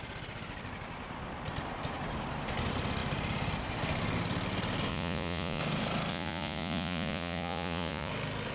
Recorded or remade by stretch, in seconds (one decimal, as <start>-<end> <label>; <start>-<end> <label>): 0.0-4.9 recorded; 4.9-5.6 remade; 5.6-6.1 recorded; 6.1-8.1 remade; 8.1-8.5 recorded